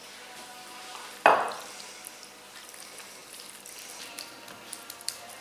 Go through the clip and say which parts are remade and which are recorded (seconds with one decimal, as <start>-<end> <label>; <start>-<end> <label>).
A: 0.0-5.4 recorded